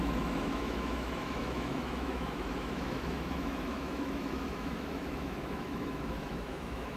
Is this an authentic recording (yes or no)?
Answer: no